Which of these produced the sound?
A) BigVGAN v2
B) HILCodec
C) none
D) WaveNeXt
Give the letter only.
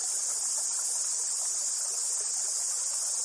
C